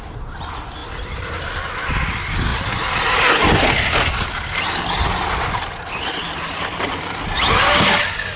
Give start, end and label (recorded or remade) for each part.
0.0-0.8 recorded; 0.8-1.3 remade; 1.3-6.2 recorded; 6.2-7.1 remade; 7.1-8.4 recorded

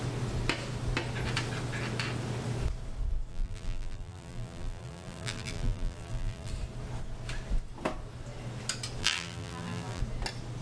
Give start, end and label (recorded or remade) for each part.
0.0-3.3 recorded; 3.3-6.5 remade; 6.5-9.0 recorded; 9.0-10.0 remade; 10.0-10.6 recorded

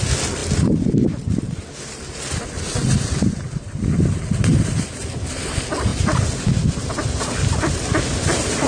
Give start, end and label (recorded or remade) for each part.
0.0-4.5 remade; 4.5-5.0 recorded; 5.0-8.7 remade